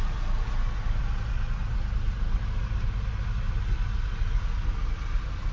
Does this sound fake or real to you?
real